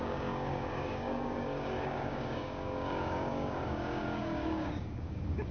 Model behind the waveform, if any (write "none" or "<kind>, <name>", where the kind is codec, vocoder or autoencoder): codec, DAC